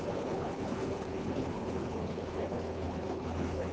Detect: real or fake fake